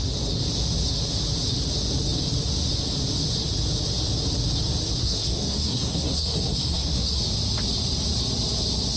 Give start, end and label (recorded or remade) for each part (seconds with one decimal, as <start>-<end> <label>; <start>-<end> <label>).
0.0-5.0 recorded; 5.0-7.2 remade; 7.2-9.0 recorded